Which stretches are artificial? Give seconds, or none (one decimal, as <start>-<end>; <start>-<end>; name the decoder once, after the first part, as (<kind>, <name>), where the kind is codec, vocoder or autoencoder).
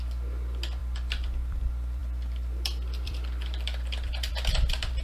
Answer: 2.0-4.3 (vocoder, BigVGAN v2)